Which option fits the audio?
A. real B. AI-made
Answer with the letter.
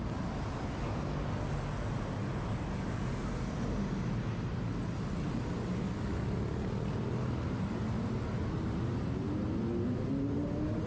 A